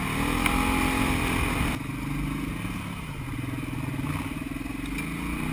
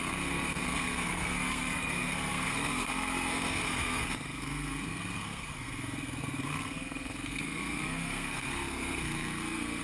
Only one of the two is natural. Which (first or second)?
first